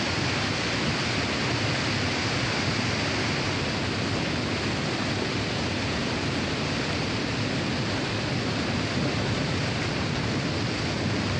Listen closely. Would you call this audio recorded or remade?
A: recorded